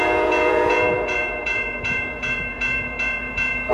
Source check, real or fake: fake